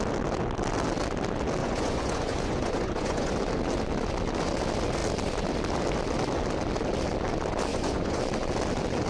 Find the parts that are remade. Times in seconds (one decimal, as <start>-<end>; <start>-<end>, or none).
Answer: 1.6-3.3; 7.7-8.2